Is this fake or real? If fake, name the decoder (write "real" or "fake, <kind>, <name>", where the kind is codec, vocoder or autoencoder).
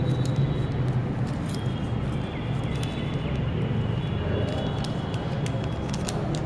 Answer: real